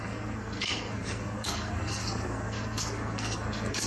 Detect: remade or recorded remade